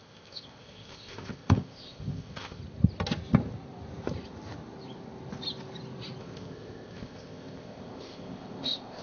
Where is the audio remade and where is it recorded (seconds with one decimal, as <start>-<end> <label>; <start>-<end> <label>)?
0.0-2.6 remade; 2.6-6.2 recorded; 6.2-9.0 remade